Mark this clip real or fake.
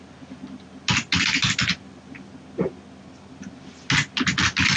real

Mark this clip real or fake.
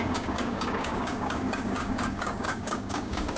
fake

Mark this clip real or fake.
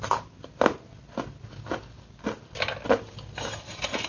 real